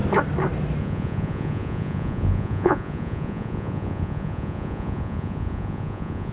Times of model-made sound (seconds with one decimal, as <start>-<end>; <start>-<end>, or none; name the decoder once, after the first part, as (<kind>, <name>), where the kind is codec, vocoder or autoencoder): 0.8-6.3 (vocoder, Vocos)